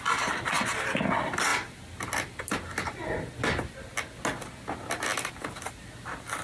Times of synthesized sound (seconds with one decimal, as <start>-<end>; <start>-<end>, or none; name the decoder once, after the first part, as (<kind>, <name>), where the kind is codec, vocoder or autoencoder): none